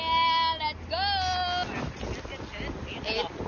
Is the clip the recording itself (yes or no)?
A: yes